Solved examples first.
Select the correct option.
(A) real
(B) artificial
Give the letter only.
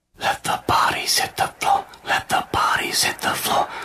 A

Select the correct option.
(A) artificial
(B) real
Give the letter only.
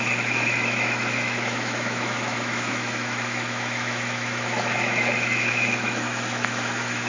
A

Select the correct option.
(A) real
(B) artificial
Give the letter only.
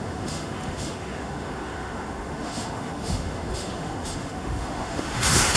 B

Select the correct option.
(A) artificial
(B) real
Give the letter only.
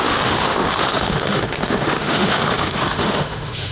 A